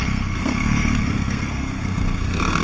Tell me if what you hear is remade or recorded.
remade